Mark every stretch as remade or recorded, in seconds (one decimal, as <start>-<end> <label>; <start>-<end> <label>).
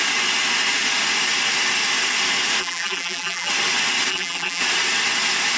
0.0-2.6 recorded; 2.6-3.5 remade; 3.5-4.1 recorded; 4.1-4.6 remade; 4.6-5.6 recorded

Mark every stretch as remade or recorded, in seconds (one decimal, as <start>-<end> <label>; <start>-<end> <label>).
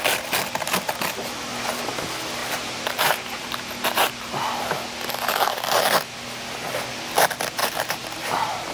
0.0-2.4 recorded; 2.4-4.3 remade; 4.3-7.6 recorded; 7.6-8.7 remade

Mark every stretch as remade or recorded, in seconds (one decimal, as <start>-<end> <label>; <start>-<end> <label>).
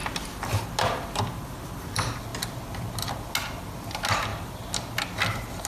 0.0-5.7 recorded